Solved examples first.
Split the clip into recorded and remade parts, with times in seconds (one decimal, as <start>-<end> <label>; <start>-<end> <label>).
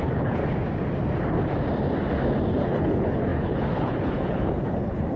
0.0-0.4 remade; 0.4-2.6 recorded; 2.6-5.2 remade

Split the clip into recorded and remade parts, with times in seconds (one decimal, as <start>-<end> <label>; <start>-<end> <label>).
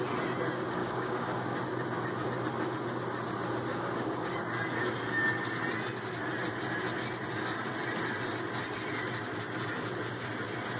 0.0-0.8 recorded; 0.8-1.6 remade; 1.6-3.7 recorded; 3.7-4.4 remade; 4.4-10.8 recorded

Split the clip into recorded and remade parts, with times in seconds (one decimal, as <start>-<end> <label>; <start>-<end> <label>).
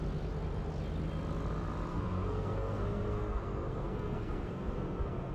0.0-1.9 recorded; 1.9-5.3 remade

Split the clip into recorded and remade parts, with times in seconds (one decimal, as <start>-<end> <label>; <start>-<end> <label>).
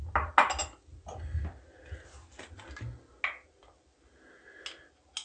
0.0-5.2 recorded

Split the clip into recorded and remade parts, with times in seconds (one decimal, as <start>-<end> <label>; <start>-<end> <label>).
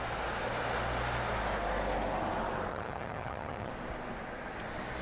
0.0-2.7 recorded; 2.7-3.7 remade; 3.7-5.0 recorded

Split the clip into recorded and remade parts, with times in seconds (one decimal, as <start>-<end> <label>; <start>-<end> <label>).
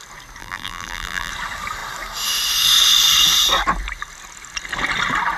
0.0-0.4 recorded; 0.4-1.3 remade; 1.3-5.4 recorded